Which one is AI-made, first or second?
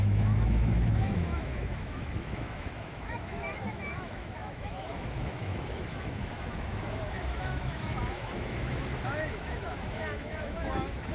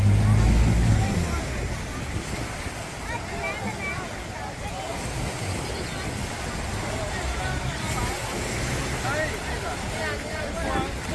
first